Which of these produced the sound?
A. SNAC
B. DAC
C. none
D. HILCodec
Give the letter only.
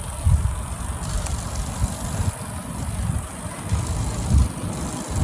C